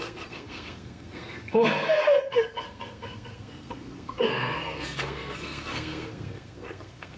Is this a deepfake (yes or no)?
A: yes